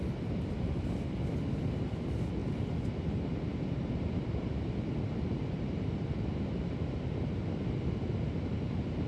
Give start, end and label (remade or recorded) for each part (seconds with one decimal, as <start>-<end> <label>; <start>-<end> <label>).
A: 0.0-9.1 recorded